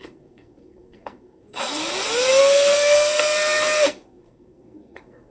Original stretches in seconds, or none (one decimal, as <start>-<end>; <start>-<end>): 1.8-2.4